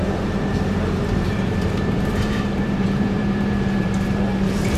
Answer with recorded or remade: remade